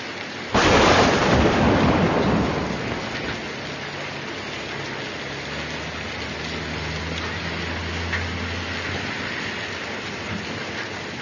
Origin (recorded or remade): recorded